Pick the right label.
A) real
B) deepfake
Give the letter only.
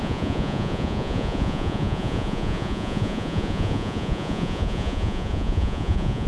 B